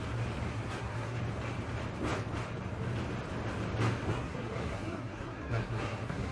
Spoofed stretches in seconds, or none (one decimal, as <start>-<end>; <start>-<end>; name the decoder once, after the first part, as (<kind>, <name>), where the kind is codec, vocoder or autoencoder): 0.5-1.2 (codec, SNAC); 4.1-6.3